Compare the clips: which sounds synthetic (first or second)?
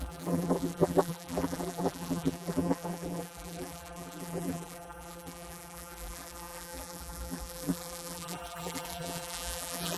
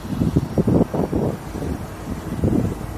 first